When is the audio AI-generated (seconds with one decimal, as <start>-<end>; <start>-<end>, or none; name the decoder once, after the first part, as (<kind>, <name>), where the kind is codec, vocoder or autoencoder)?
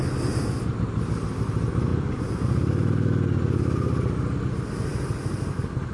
none